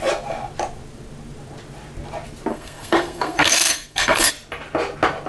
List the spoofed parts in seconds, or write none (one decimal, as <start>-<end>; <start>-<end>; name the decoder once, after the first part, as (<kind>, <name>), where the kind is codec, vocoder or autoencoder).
2.5-4.3 (codec, SNAC)